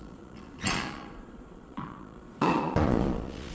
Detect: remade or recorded remade